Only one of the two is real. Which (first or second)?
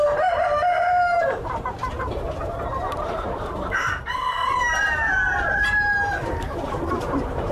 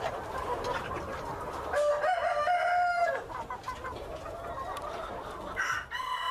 second